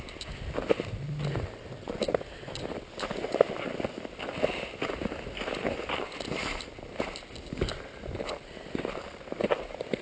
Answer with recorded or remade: recorded